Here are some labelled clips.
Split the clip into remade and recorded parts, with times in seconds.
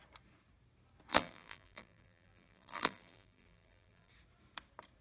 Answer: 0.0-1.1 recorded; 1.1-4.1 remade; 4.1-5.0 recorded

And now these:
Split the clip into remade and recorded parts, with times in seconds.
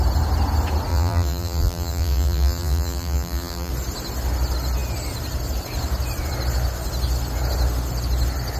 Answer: 0.0-0.9 recorded; 0.9-3.7 remade; 3.7-8.6 recorded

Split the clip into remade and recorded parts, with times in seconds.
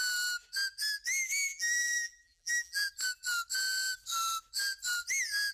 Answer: 0.0-1.5 recorded; 1.5-2.9 remade; 2.9-5.5 recorded